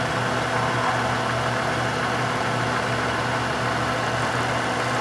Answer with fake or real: real